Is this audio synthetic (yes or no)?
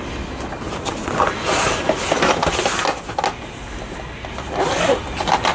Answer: no